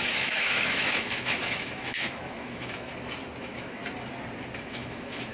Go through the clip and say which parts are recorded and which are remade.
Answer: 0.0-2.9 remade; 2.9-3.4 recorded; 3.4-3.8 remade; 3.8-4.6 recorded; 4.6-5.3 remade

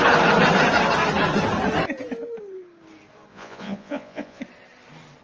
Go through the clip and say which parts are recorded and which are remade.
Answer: 0.0-3.3 recorded; 3.3-4.4 remade; 4.4-5.2 recorded

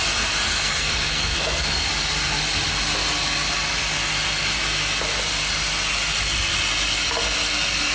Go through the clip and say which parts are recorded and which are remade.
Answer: 0.0-0.5 recorded; 0.5-1.9 remade; 1.9-7.9 recorded

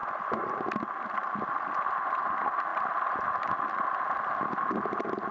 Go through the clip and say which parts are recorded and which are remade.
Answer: 0.0-5.3 recorded

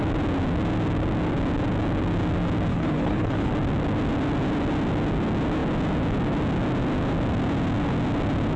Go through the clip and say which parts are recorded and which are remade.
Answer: 0.0-2.7 recorded; 2.7-3.5 remade; 3.5-8.6 recorded

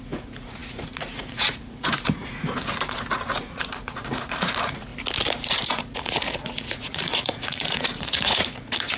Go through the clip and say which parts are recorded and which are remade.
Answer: 0.0-4.9 remade; 4.9-5.7 recorded; 5.7-9.0 remade

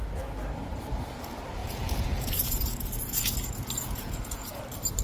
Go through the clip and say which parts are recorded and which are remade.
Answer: 0.0-1.6 recorded; 1.6-4.6 remade; 4.6-5.0 recorded

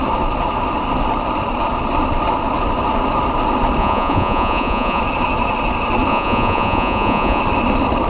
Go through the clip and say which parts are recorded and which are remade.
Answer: 0.0-3.8 recorded; 3.8-5.0 remade; 5.0-6.1 recorded; 6.1-7.4 remade; 7.4-8.1 recorded